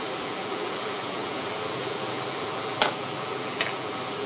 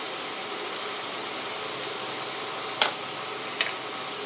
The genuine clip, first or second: second